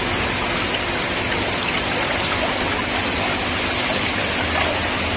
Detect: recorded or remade recorded